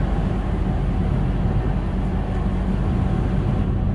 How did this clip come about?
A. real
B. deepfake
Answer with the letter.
A